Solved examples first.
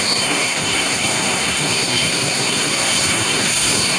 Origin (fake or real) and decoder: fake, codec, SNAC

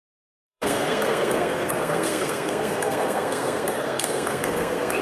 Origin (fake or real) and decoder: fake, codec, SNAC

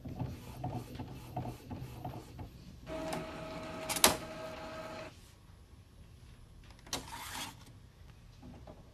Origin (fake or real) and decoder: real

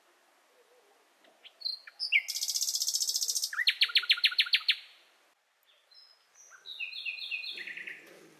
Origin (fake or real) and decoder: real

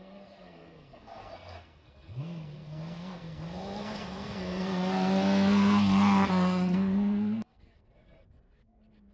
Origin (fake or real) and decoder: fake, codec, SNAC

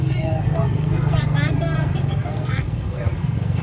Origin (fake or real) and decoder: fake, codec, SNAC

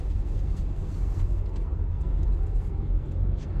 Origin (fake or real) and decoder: fake, codec, SNAC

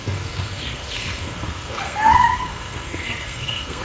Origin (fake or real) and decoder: fake, codec, SNAC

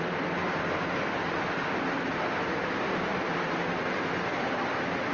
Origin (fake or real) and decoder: real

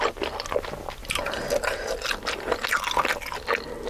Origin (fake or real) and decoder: real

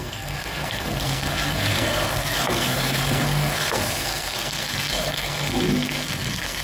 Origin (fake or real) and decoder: fake, codec, SNAC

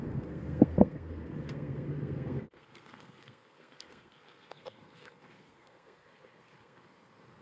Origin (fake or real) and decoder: fake, codec, SNAC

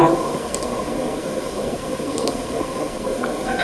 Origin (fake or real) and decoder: fake, codec, SNAC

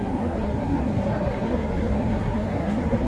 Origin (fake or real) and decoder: fake, codec, SNAC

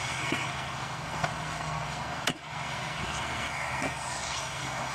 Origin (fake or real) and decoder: fake, codec, SNAC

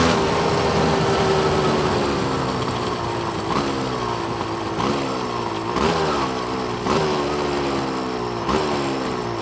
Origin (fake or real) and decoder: real